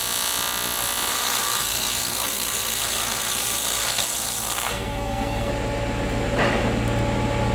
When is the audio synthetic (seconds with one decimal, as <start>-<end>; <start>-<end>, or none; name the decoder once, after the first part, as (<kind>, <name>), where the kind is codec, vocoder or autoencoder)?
1.1-5.5 (codec, SNAC)